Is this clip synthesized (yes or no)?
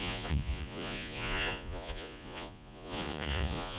yes